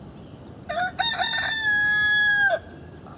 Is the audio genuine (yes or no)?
yes